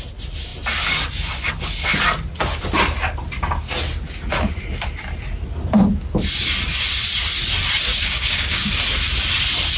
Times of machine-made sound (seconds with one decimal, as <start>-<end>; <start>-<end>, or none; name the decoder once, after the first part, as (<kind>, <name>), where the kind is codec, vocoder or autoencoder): 7.9-8.7 (codec, DAC)